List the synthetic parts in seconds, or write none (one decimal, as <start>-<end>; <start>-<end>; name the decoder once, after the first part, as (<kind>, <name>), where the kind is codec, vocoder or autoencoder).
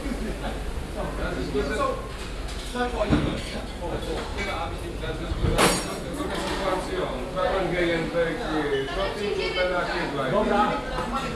2.7-3.6 (codec, SNAC)